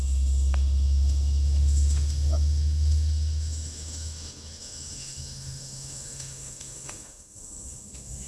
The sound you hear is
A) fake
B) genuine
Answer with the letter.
A